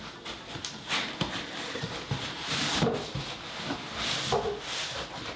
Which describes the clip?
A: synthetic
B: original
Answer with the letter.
B